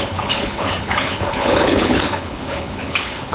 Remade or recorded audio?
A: remade